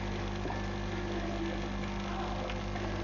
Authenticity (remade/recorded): recorded